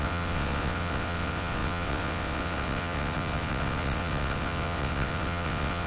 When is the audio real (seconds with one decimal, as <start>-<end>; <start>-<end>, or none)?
none